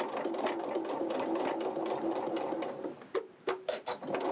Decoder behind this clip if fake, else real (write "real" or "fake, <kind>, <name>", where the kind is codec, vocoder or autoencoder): real